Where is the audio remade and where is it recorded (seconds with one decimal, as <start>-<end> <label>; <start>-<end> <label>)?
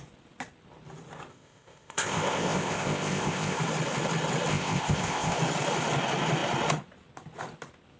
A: 0.0-1.3 recorded; 1.3-3.6 remade; 3.6-4.5 recorded; 4.5-5.4 remade; 5.4-8.0 recorded